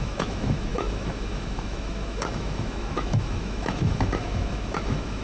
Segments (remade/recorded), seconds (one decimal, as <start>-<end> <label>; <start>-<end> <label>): 0.0-5.2 remade